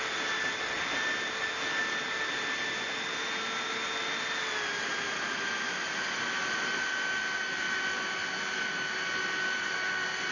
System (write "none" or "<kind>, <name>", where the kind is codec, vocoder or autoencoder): none